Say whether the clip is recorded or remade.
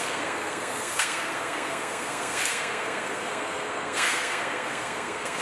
remade